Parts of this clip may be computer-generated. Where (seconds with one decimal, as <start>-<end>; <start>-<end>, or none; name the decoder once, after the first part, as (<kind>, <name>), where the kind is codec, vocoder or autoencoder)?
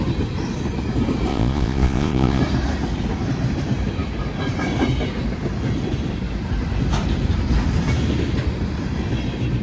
1.3-2.4 (vocoder, Vocos)